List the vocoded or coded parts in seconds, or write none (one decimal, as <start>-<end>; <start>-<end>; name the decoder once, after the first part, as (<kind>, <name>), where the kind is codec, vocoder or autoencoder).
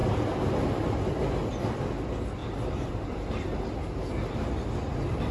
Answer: 2.4-3.7 (vocoder, BigVGAN v2)